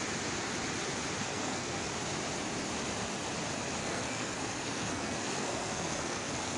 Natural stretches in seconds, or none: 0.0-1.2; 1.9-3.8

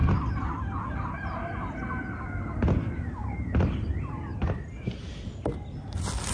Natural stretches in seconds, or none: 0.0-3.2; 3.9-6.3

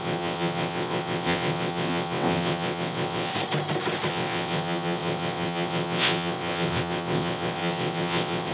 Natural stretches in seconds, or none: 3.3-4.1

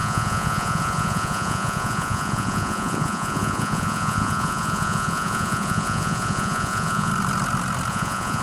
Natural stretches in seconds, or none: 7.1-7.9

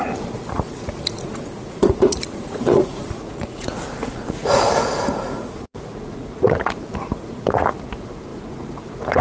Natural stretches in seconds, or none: none

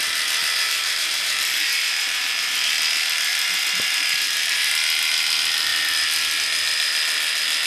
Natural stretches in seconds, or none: 0.0-0.4; 2.7-3.3; 4.7-7.7